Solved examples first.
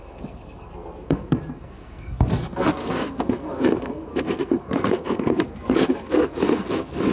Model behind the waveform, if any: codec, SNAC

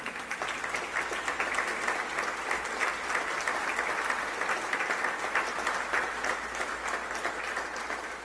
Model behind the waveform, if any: none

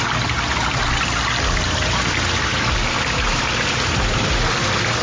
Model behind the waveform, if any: none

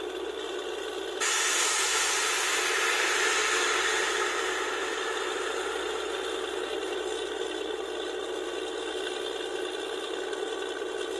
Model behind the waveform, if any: none